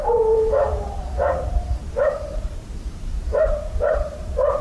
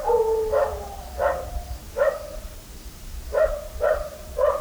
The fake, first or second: first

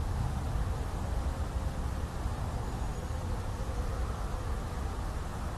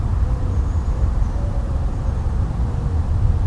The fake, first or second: second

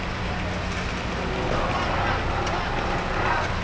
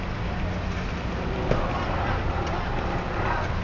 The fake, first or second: second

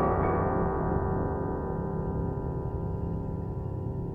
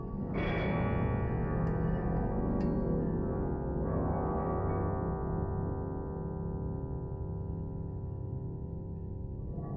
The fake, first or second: first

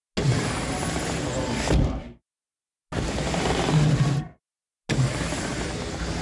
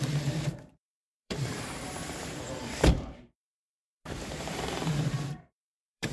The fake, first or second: second